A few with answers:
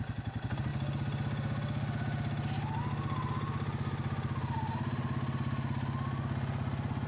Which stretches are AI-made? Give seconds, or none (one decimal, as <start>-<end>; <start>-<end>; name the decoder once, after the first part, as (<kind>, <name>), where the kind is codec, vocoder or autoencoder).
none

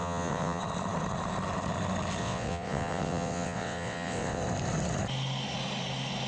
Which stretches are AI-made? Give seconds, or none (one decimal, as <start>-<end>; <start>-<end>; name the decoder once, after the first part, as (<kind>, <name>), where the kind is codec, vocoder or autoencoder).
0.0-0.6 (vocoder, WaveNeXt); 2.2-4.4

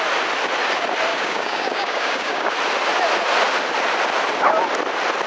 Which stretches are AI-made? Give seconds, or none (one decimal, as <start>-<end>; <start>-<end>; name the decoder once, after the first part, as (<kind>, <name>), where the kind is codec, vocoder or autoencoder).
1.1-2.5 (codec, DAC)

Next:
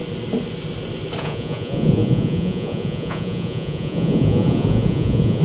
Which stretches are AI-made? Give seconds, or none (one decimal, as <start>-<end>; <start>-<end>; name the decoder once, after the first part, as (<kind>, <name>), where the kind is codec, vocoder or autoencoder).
1.2-5.4 (vocoder, Vocos)